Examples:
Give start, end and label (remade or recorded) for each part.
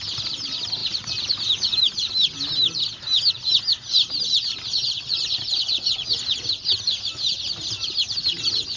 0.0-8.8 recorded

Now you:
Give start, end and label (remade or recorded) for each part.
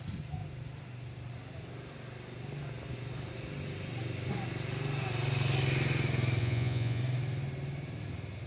0.0-6.4 recorded; 6.4-7.0 remade; 7.0-8.5 recorded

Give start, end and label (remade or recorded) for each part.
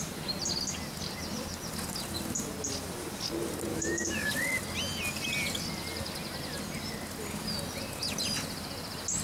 0.0-3.7 recorded; 3.7-4.3 remade; 4.3-9.2 recorded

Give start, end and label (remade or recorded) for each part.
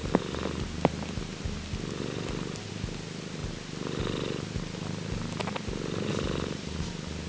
0.0-7.3 recorded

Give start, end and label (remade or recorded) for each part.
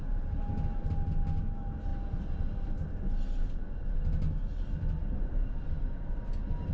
0.0-1.9 recorded; 1.9-2.8 remade; 2.8-6.7 recorded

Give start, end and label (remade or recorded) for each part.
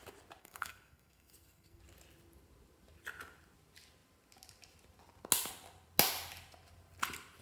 0.0-0.4 recorded; 0.4-1.8 remade; 1.8-7.4 recorded